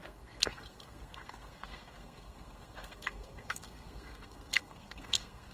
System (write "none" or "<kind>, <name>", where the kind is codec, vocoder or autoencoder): codec, SNAC